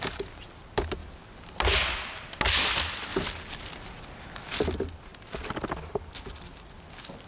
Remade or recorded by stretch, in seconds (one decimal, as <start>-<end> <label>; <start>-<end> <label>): 0.0-7.3 recorded